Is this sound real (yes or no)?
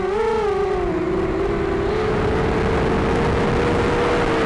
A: yes